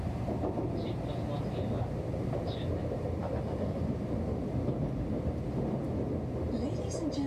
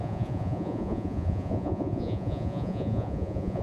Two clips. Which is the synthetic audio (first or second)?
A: second